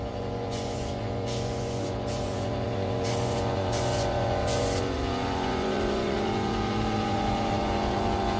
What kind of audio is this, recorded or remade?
remade